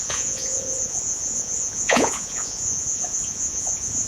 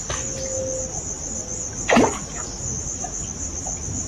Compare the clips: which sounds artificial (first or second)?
first